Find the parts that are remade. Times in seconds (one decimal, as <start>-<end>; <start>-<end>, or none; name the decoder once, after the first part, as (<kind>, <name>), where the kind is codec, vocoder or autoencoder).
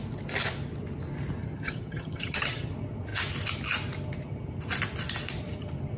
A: 1.4-2.7 (vocoder, HiFi-GAN)